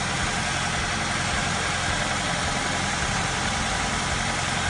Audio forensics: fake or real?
real